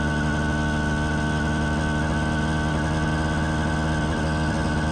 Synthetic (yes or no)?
no